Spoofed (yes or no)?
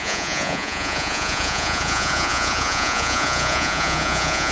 yes